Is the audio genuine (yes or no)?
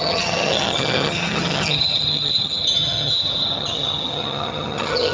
no